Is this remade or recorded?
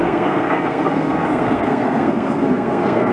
remade